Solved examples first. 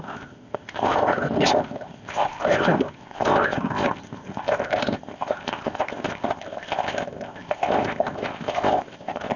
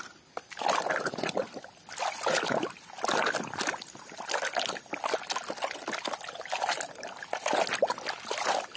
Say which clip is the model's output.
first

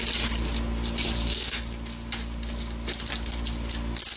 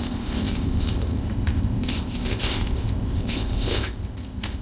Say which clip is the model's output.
second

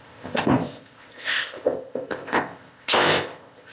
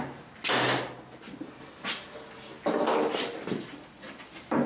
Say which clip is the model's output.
first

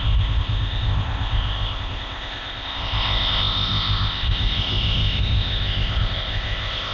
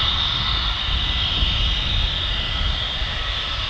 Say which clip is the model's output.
first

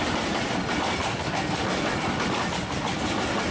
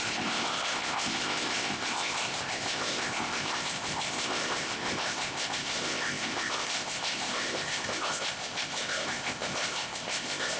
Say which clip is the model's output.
second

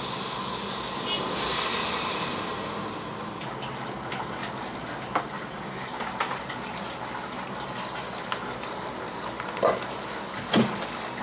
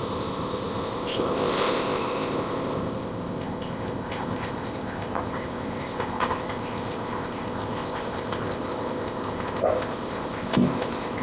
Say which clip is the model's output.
second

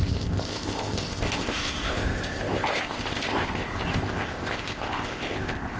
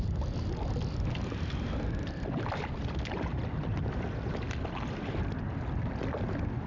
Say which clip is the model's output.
first